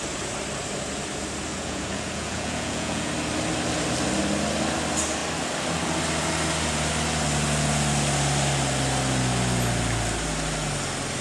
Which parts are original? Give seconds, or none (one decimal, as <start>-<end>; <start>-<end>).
0.0-1.5; 3.1-11.2